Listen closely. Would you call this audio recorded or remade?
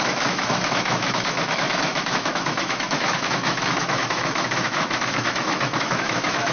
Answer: remade